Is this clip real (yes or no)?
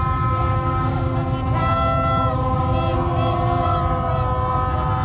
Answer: yes